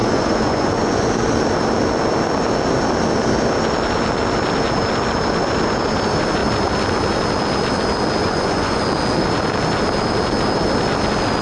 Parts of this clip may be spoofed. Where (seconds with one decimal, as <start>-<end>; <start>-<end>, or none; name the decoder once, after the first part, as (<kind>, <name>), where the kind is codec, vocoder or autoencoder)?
0.0-1.1 (vocoder, Vocos); 8.2-8.8